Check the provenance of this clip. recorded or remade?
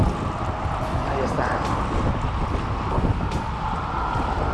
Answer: recorded